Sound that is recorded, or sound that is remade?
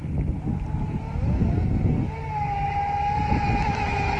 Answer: recorded